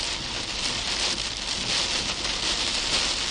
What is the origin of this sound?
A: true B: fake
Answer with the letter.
A